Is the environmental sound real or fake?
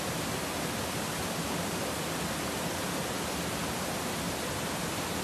real